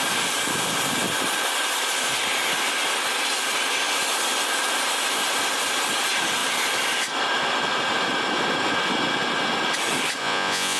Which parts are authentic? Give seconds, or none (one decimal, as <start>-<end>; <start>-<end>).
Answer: 0.0-10.2